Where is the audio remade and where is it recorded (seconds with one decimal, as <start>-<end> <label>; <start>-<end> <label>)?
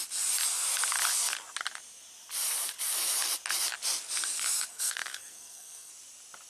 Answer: 0.0-4.7 recorded; 4.7-5.9 remade; 5.9-6.5 recorded